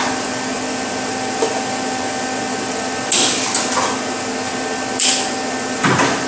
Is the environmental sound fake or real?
real